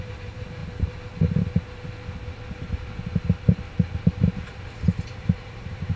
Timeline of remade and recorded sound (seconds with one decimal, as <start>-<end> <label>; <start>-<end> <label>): 0.0-0.6 remade; 0.6-4.2 recorded; 4.2-6.0 remade